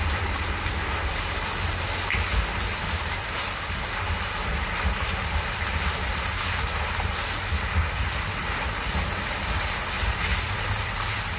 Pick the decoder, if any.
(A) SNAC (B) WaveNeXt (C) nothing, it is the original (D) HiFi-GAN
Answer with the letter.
C